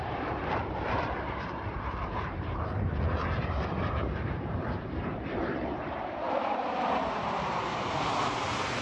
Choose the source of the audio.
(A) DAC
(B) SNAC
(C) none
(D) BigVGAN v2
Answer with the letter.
D